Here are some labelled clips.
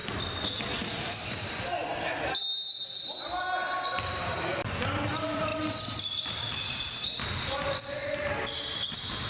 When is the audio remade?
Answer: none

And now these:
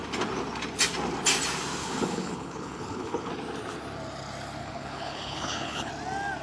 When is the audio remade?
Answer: 1.8-3.3 (codec, HILCodec); 4.6-5.9

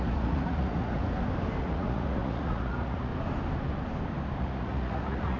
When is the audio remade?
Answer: 0.0-1.0 (vocoder, Vocos); 1.6-3.1; 4.4-5.4

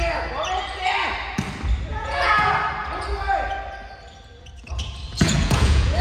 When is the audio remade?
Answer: 1.9-2.5 (vocoder, Vocos); 5.1-6.0

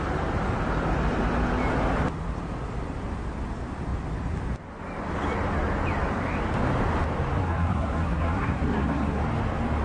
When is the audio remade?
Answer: 7.4-9.2 (codec, SNAC)

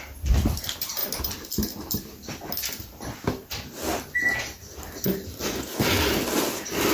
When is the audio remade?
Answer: none

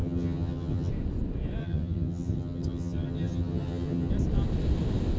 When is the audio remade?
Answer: 0.0-0.9 (vocoder, HiFi-GAN); 1.6-4.1